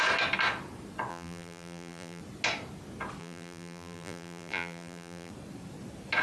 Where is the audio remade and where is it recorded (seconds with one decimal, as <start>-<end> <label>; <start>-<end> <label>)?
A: 0.0-1.1 recorded; 1.1-2.2 remade; 2.2-3.2 recorded; 3.2-5.3 remade; 5.3-6.2 recorded

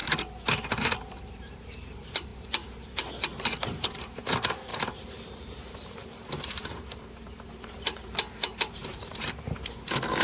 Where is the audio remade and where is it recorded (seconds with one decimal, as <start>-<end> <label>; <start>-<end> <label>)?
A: 0.0-1.0 recorded; 1.0-10.2 remade